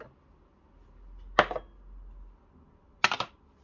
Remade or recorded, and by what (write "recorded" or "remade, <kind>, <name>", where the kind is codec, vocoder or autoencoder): recorded